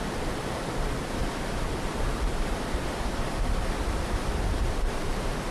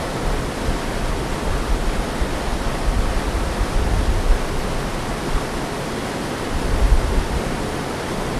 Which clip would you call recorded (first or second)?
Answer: second